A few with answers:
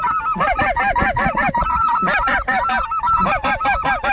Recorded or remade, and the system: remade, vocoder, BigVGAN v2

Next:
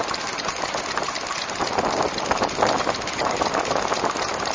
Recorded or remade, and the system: recorded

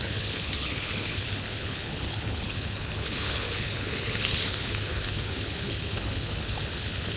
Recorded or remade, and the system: remade, codec, HILCodec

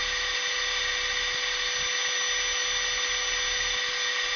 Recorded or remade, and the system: recorded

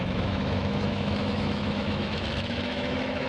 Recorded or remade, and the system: remade, autoencoder, DAC-VAE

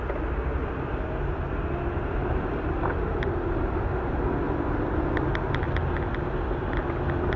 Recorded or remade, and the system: recorded